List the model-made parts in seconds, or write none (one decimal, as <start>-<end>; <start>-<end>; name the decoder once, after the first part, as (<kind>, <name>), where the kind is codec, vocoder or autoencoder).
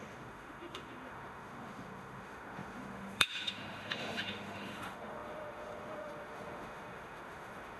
0.0-7.8 (autoencoder, DAC-VAE)